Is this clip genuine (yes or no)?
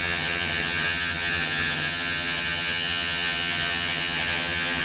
no